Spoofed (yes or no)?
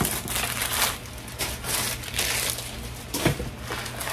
no